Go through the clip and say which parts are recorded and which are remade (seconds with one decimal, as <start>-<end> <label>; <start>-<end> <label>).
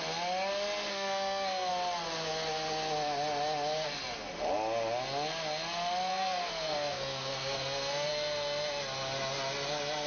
0.0-0.9 recorded; 0.9-1.7 remade; 1.7-6.1 recorded; 6.1-8.1 remade; 8.1-10.1 recorded